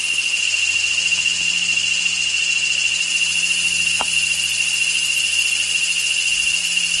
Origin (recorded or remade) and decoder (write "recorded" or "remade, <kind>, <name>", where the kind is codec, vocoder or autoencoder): recorded